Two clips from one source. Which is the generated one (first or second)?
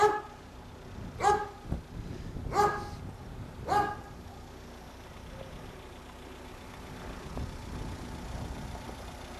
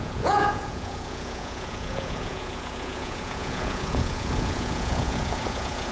second